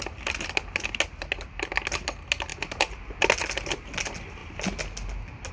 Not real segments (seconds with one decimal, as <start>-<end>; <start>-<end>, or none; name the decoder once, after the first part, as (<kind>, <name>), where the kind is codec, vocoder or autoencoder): none

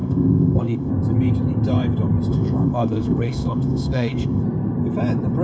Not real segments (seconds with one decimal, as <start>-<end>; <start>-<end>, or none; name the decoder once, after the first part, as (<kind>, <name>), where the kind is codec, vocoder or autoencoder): 0.0-0.9 (codec, ZipCodec); 2.3-4.4

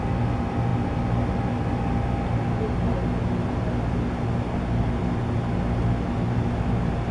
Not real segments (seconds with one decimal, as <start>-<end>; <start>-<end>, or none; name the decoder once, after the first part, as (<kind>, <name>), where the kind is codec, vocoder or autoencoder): none